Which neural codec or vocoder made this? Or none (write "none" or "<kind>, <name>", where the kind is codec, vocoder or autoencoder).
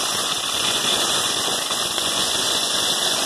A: vocoder, Vocos